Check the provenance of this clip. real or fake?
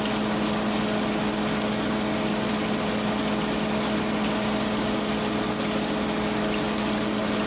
real